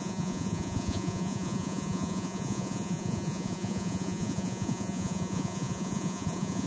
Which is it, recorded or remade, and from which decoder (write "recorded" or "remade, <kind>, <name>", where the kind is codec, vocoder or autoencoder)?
remade, vocoder, Vocos